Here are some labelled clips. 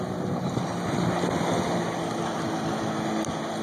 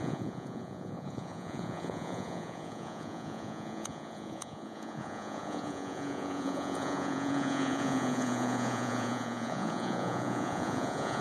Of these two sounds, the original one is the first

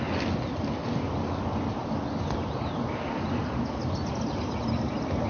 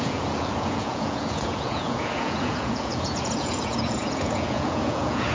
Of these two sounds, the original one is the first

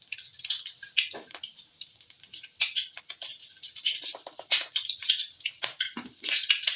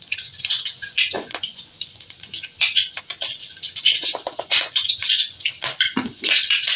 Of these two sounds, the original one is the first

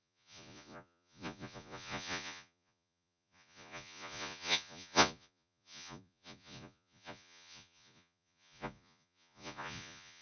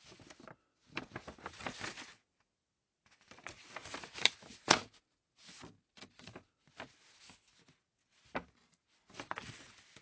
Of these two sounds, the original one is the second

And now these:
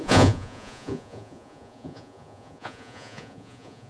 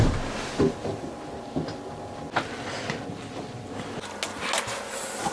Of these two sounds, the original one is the second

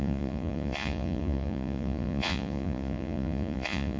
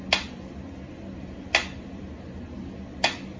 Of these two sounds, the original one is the second